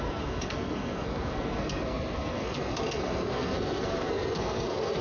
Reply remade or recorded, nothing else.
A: remade